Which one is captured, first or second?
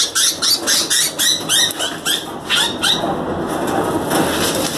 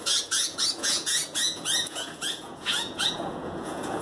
first